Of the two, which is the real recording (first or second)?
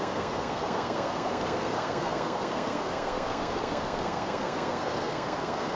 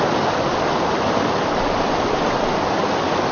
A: second